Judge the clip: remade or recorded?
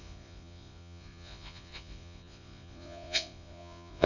remade